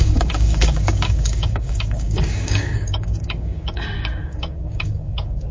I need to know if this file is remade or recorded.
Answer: remade